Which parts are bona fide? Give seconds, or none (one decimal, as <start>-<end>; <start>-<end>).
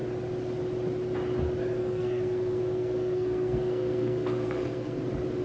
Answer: 0.0-1.8; 5.0-5.4